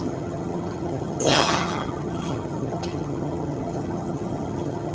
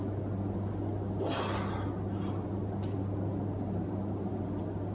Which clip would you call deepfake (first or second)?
first